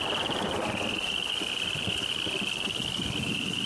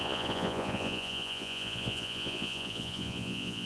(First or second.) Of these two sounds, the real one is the first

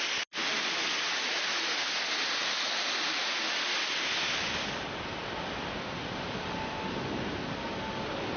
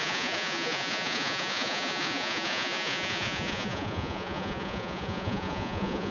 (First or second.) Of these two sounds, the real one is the first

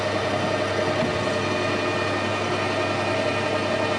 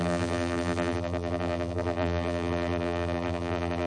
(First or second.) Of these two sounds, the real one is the first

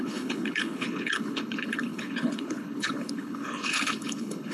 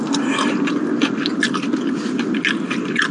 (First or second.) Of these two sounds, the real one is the second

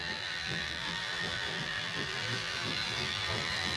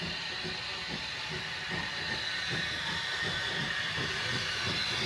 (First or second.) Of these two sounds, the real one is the second